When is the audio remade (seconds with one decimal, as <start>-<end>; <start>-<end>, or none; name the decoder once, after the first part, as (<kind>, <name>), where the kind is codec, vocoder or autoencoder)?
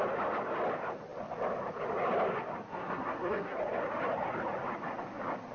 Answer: 2.7-3.6 (codec, SNAC)